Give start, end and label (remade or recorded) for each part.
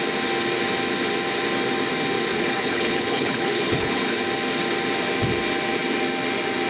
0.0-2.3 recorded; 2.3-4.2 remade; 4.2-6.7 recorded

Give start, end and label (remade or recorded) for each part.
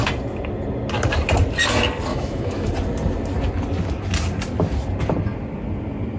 0.0-2.1 recorded; 2.1-2.7 remade; 2.7-6.2 recorded